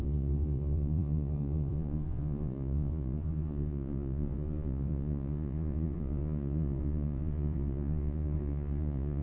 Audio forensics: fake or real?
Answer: fake